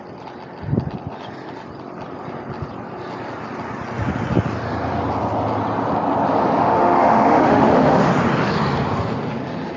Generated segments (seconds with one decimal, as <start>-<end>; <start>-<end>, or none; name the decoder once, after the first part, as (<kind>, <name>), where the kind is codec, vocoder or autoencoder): 6.6-8.1 (autoencoder, DAC-VAE)